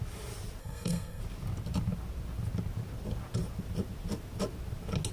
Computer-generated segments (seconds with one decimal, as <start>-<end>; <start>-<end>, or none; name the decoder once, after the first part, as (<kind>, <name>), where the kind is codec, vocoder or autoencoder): 0.6-1.2 (codec, SNAC)